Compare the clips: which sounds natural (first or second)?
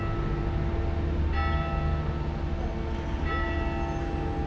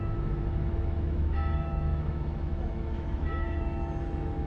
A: first